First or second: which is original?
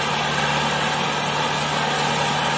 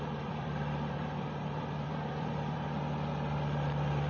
first